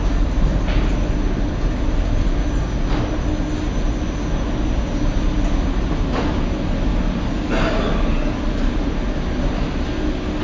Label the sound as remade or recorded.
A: recorded